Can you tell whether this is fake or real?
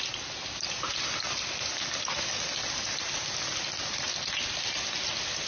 real